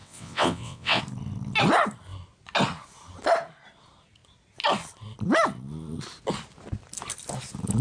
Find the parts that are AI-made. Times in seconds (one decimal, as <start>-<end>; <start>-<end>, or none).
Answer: 0.0-1.0